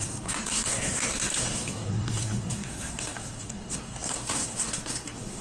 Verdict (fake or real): fake